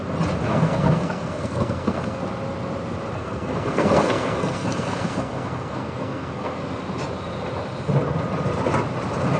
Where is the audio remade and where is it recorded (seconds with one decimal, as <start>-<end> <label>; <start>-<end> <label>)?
0.0-0.4 recorded; 0.4-2.2 remade; 2.2-3.2 recorded; 3.2-6.6 remade; 6.6-9.4 recorded